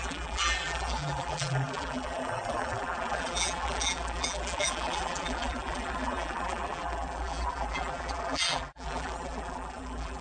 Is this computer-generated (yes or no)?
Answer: yes